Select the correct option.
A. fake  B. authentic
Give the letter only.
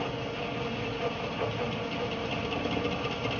B